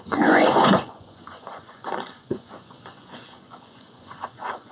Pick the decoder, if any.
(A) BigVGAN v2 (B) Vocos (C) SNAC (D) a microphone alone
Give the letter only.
B